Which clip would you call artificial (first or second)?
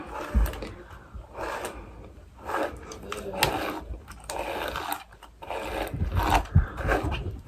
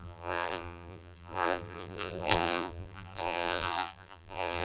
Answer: second